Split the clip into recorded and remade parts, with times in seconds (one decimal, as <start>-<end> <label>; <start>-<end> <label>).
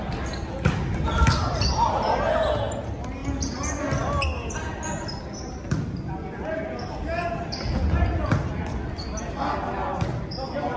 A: 0.0-10.8 recorded